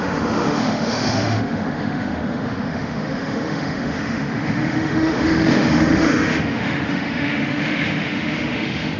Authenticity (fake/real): fake